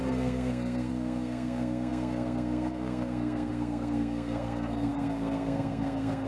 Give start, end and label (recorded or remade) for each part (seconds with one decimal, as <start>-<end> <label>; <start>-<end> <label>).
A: 0.0-6.3 remade